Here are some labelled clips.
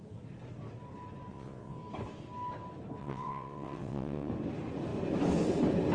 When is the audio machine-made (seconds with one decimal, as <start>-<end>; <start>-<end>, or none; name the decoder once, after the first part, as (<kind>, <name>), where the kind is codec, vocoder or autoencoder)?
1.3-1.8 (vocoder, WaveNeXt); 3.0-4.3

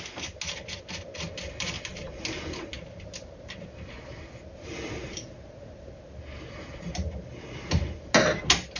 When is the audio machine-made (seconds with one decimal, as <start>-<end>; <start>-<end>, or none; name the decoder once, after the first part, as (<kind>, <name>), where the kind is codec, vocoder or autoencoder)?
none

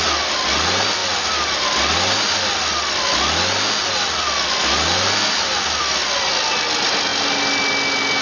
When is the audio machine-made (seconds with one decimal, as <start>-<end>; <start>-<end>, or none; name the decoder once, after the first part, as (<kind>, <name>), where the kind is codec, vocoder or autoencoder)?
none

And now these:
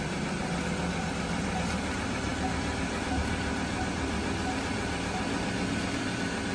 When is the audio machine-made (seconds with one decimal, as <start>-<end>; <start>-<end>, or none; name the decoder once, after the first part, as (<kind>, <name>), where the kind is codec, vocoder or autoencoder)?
none

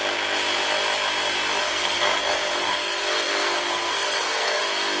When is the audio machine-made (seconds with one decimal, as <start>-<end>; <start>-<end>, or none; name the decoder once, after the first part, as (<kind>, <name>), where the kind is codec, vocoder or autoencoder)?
1.6-4.6 (codec, SNAC)